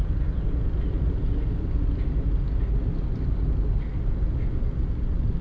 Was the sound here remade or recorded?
recorded